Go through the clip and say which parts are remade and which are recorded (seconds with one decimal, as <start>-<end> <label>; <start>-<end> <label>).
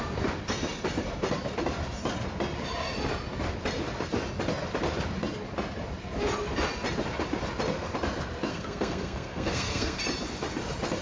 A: 0.0-8.5 recorded; 8.5-10.0 remade; 10.0-11.0 recorded